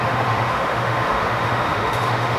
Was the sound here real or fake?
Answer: fake